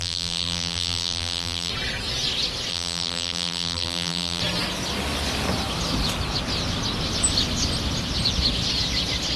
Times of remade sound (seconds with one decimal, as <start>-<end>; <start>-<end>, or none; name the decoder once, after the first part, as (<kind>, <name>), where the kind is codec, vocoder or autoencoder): 0.0-1.7 (vocoder, BigVGAN v2); 2.7-4.4